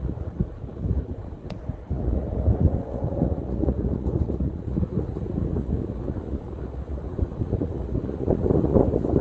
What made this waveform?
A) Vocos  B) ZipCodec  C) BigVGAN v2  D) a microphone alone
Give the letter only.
A